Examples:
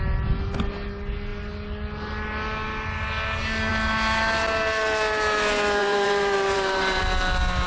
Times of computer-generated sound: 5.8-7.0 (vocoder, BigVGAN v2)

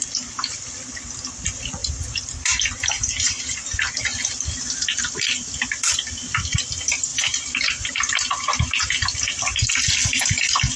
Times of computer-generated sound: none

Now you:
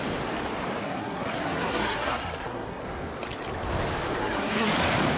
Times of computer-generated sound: 0.8-2.8 (codec, SNAC); 4.2-4.7

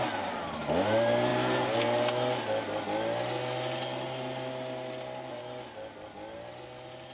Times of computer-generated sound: none

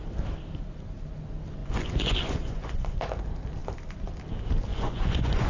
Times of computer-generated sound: 1.6-3.0 (vocoder, Vocos); 4.7-5.5

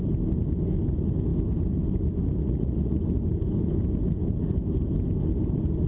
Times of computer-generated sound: 2.4-3.0 (vocoder, Vocos)

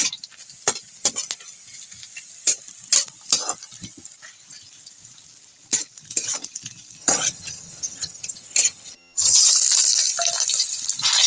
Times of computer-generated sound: 7.0-9.5 (vocoder, HiFi-GAN)

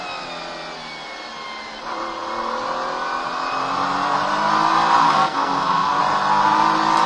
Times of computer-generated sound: 5.0-6.0 (codec, SNAC)